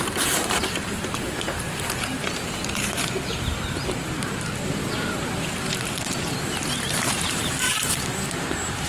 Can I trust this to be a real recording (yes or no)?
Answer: no